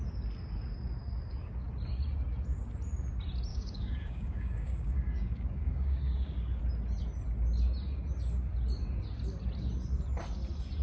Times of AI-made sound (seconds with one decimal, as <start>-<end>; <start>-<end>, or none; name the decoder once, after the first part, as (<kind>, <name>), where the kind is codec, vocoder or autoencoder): 3.5-6.6 (codec, DAC)